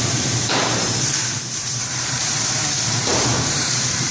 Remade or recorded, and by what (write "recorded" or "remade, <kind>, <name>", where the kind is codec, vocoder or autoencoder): remade, vocoder, BigVGAN v2